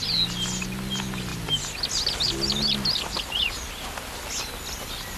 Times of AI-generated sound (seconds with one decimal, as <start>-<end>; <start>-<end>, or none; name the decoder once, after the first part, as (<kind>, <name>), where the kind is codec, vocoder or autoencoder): none